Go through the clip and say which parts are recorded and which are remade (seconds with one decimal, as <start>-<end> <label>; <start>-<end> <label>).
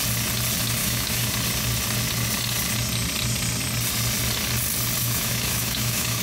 0.0-0.8 recorded; 0.8-1.3 remade; 1.3-5.0 recorded; 5.0-6.2 remade